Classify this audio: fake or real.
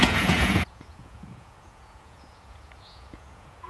fake